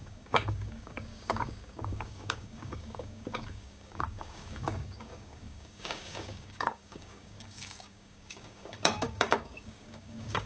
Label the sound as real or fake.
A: fake